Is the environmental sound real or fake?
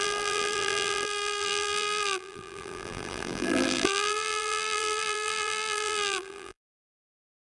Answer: fake